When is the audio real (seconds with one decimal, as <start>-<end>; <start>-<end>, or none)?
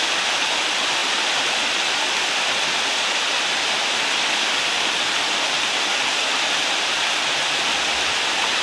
0.0-8.6